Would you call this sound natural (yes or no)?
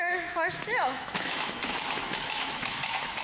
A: no